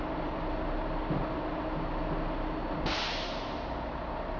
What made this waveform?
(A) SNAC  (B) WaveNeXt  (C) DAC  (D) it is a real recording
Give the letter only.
D